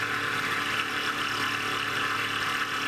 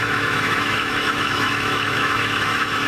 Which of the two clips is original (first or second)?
first